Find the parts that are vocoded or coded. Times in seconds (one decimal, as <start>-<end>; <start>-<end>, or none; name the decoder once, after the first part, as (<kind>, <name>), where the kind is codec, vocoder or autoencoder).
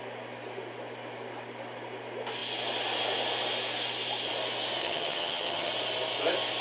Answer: 4.8-5.7 (vocoder, HiFi-GAN)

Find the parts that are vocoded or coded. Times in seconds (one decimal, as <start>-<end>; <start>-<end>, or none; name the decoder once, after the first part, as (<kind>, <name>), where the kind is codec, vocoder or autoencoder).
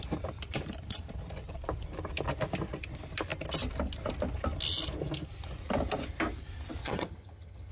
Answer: 6.8-7.7 (vocoder, HiFi-GAN)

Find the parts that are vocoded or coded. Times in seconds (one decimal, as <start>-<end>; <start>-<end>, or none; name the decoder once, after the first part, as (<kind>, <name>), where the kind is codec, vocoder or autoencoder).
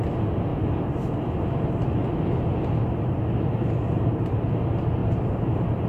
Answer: none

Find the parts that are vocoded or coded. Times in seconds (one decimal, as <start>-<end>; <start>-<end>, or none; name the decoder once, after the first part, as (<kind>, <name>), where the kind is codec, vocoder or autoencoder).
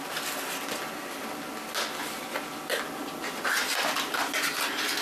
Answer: none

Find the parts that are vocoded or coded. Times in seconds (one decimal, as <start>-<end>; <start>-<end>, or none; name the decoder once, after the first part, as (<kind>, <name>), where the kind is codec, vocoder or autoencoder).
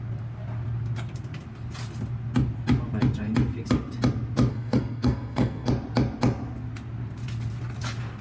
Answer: 4.5-5.7 (codec, SNAC)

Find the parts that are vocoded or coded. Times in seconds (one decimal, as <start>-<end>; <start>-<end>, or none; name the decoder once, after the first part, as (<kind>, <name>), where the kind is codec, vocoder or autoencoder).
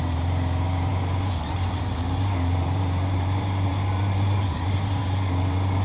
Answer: 0.0-5.8 (vocoder, BigVGAN v2)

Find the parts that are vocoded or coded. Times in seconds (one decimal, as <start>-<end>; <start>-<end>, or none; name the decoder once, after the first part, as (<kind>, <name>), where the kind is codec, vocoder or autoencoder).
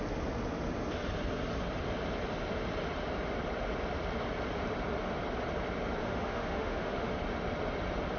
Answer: 6.0-7.1 (autoencoder, DAC-VAE)